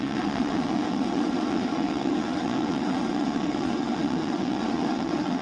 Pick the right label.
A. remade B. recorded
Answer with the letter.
A